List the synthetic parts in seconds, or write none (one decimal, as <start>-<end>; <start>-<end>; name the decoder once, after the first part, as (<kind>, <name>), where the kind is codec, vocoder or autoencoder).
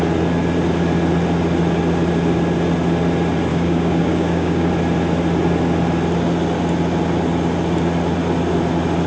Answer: 3.5-4.7 (codec, DAC)